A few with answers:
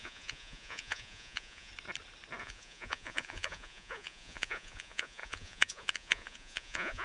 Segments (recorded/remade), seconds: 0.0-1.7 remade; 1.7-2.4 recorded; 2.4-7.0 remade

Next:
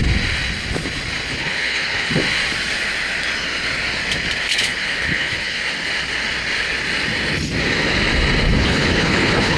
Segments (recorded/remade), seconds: 0.0-1.3 recorded; 1.3-2.1 remade; 2.1-4.5 recorded; 4.5-5.6 remade; 5.6-8.6 recorded; 8.6-9.6 remade

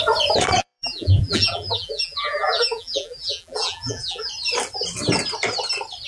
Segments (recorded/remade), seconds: 0.0-0.6 recorded; 0.6-4.3 remade; 4.3-6.1 recorded

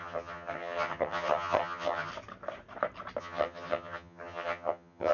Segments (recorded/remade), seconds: 0.0-2.1 remade; 2.1-3.2 recorded; 3.2-5.1 remade